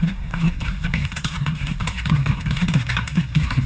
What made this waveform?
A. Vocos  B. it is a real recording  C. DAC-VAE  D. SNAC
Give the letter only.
D